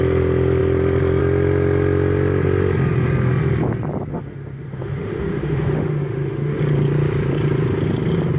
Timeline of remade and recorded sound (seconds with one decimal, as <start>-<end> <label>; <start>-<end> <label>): 0.0-4.1 recorded; 4.1-6.6 remade; 6.6-8.4 recorded